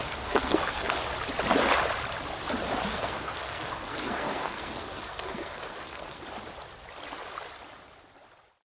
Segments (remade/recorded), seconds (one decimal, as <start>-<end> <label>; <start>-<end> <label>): 0.0-0.9 remade; 0.9-2.9 recorded; 2.9-6.2 remade; 6.2-8.6 recorded